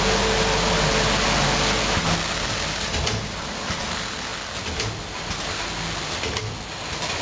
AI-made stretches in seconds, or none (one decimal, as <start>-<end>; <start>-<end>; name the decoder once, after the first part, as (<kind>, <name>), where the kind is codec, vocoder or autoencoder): none